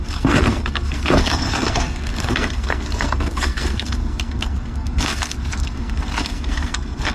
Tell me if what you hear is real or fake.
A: fake